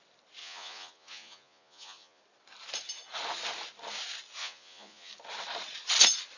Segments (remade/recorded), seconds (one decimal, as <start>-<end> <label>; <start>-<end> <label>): 0.0-0.4 recorded; 0.4-2.2 remade; 2.2-4.4 recorded; 4.4-5.1 remade; 5.1-6.4 recorded

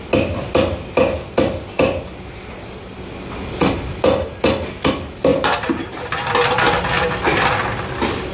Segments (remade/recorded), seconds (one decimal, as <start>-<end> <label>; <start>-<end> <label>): 0.0-5.3 recorded; 5.3-6.1 remade; 6.1-8.3 recorded

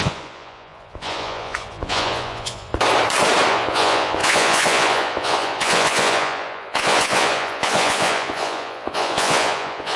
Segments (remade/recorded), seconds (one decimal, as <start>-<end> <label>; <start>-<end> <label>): 0.0-2.7 remade; 2.7-3.5 recorded; 3.5-10.0 remade

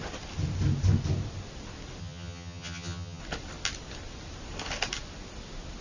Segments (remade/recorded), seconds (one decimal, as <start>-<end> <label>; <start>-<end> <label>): 0.0-2.0 recorded; 2.0-3.2 remade; 3.2-5.8 recorded